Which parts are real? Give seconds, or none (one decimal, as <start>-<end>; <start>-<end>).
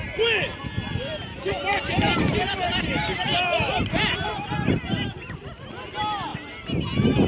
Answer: 0.0-1.1; 5.5-7.3